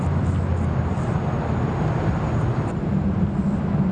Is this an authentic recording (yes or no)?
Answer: yes